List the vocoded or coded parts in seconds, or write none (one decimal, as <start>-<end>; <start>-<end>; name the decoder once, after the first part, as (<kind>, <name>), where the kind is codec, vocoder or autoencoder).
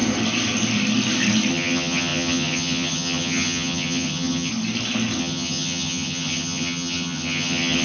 1.5-4.5 (vocoder, HiFi-GAN); 5.2-7.8